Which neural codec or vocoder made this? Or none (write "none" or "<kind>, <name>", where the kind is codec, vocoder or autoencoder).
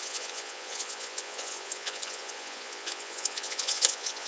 vocoder, Vocos